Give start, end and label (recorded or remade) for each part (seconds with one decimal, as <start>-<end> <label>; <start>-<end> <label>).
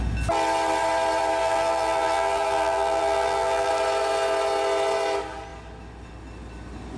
0.0-1.4 recorded; 1.4-3.7 remade; 3.7-7.0 recorded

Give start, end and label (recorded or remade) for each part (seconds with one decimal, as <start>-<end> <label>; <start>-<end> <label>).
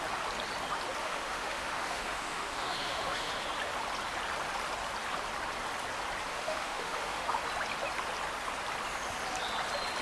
0.0-1.0 recorded; 1.0-3.3 remade; 3.3-6.3 recorded; 6.3-7.4 remade; 7.4-10.0 recorded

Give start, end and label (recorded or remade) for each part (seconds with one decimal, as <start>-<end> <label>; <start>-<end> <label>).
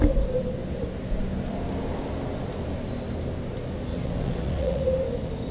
0.0-3.9 recorded; 3.9-4.8 remade; 4.8-5.5 recorded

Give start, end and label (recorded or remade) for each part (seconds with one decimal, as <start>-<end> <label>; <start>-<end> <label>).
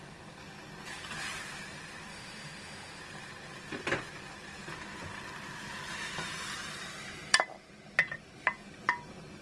0.0-2.1 recorded; 2.1-3.0 remade; 3.0-9.4 recorded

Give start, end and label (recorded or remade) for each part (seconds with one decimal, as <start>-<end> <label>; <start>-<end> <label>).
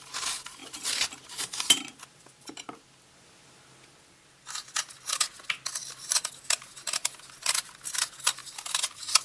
0.0-9.2 recorded